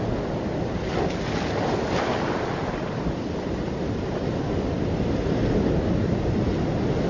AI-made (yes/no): no